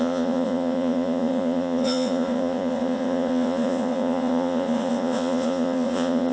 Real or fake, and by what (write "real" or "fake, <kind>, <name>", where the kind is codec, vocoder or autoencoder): fake, vocoder, Vocos